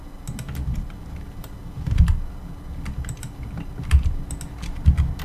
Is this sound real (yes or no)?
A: yes